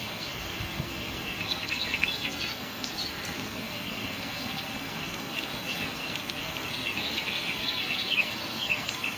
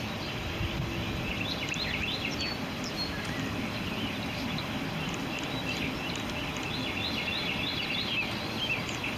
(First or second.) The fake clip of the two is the first